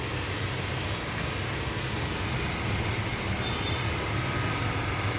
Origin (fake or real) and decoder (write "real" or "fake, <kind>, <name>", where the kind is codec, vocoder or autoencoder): real